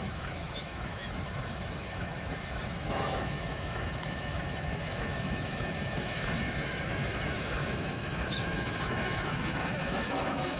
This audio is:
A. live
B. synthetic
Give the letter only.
B